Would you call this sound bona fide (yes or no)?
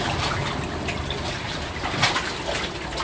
yes